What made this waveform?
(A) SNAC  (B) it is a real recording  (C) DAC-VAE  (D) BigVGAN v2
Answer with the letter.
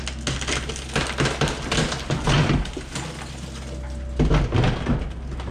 B